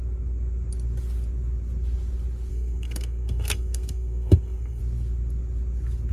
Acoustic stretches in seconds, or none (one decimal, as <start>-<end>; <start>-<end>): 0.0-2.5; 4.8-6.1